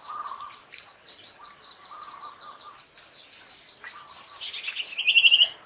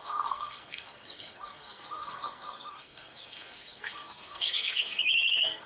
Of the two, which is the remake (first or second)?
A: second